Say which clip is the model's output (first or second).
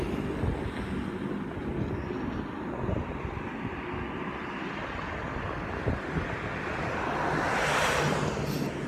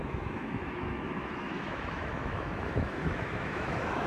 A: second